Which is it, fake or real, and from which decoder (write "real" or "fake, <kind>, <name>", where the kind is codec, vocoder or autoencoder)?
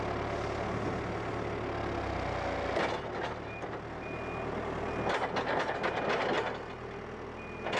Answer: real